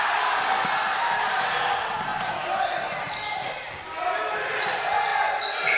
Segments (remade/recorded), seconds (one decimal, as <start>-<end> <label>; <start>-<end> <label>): 0.0-5.8 recorded